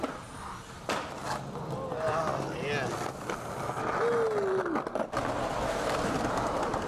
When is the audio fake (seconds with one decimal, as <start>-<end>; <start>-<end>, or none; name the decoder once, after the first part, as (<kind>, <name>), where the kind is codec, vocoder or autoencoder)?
0.0-1.2 (vocoder, BigVGAN v2); 5.3-6.9